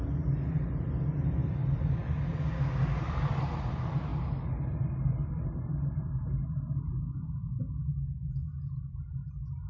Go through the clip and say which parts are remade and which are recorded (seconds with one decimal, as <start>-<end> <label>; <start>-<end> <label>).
0.0-9.7 recorded